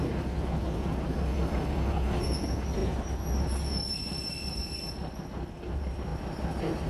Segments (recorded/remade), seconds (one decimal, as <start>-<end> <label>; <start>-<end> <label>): 0.0-6.9 recorded